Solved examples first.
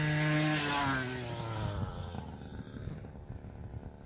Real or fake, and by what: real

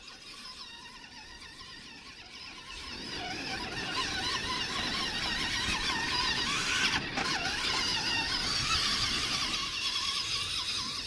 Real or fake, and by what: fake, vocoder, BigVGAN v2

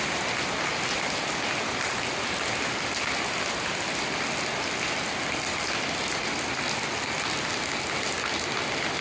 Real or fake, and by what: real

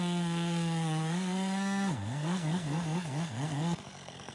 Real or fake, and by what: fake, codec, SNAC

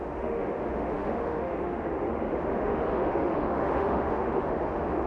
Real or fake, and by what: fake, autoencoder, DAC-VAE